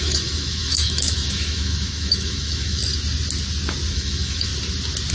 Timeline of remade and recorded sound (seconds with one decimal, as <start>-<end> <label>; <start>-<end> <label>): 0.0-2.8 remade; 2.8-3.9 recorded; 3.9-4.5 remade; 4.5-5.1 recorded